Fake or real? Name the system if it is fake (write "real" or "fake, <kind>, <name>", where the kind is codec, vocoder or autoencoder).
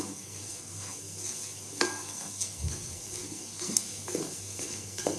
fake, codec, SNAC